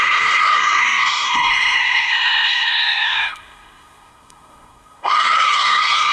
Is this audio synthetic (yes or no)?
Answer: yes